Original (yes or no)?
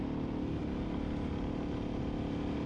yes